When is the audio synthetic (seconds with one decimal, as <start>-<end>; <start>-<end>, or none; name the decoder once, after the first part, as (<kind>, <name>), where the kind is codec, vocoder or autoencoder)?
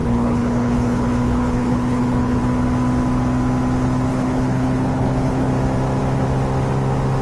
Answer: 0.0-2.4 (codec, HILCodec); 4.1-5.5